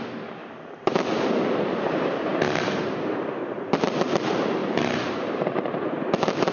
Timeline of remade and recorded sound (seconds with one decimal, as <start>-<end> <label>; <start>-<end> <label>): 0.0-0.4 recorded; 0.4-1.0 remade; 1.0-4.6 recorded; 4.6-6.5 remade